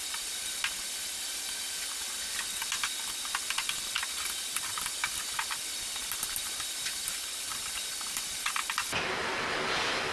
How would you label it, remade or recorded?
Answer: recorded